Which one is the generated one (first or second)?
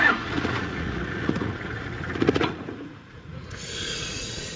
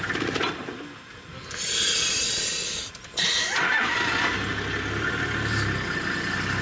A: first